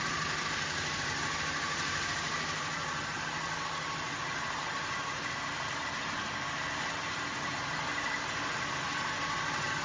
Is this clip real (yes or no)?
yes